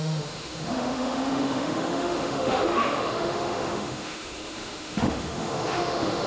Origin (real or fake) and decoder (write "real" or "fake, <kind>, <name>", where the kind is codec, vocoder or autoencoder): fake, autoencoder, DAC-VAE